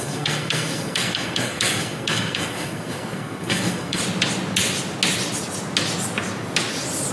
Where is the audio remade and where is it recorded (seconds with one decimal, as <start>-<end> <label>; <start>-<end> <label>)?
0.0-4.0 remade; 4.0-7.1 recorded